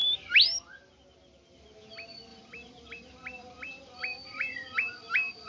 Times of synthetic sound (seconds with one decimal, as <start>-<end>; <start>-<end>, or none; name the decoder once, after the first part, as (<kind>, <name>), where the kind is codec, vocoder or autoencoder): 0.0-0.9 (vocoder, BigVGAN v2); 2.3-5.5